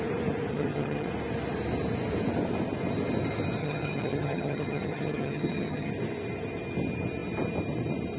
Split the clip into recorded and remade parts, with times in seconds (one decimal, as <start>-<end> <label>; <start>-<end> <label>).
0.0-0.5 recorded; 0.5-1.1 remade; 1.1-3.6 recorded; 3.6-5.9 remade; 5.9-8.2 recorded